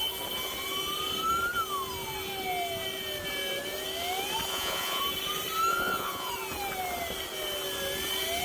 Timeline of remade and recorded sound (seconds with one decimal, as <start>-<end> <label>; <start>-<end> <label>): 0.0-4.5 recorded; 4.5-5.0 remade; 5.0-5.7 recorded; 5.7-6.3 remade; 6.3-8.4 recorded